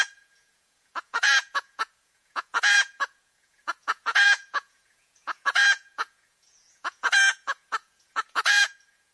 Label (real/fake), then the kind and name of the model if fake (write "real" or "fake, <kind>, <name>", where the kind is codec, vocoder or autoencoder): fake, vocoder, Vocos